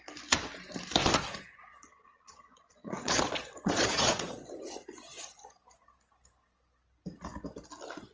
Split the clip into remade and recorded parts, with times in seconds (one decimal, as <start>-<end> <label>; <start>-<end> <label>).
0.0-1.0 recorded; 1.0-4.5 remade; 4.5-8.1 recorded